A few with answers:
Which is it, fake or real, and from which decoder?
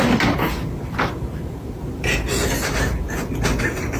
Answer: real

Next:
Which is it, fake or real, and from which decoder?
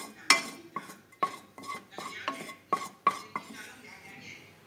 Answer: real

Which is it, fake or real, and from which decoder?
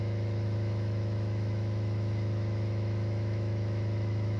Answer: fake, autoencoder, DAC-VAE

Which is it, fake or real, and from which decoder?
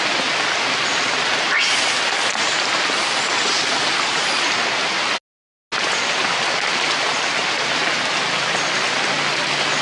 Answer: real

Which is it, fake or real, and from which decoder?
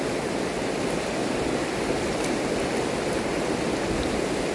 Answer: real